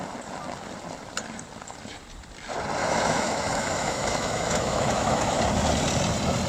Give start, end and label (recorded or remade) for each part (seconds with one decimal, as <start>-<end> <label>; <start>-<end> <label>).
0.0-2.8 recorded; 2.8-5.4 remade; 5.4-6.5 recorded